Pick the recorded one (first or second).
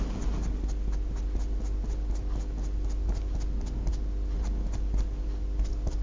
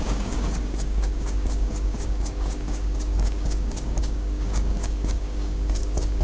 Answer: first